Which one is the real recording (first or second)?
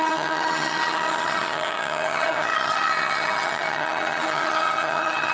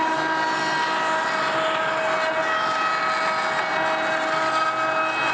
second